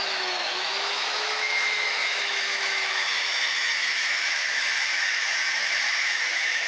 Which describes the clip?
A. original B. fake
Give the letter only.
B